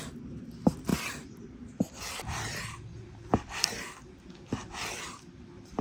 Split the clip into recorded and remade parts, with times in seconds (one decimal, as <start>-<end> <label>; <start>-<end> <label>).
0.0-5.8 recorded